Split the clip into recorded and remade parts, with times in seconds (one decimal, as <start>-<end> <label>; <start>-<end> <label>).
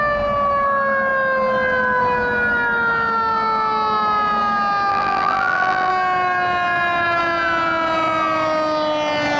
0.0-4.9 recorded; 4.9-5.9 remade; 5.9-9.4 recorded